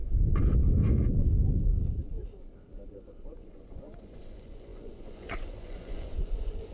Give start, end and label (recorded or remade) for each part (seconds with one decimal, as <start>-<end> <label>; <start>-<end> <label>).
0.0-2.9 recorded; 2.9-6.7 remade